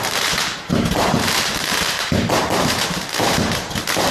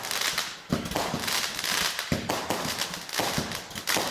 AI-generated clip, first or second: first